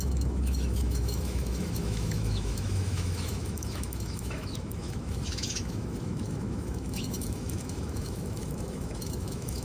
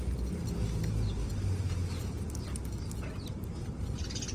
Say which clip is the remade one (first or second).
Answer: first